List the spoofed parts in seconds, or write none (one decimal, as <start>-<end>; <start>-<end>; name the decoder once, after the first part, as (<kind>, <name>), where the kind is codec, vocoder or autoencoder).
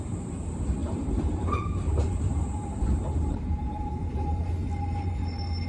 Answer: 0.8-4.2 (vocoder, BigVGAN v2)